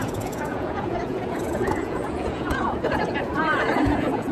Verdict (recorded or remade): remade